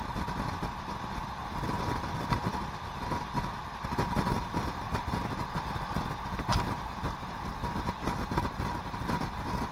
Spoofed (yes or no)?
no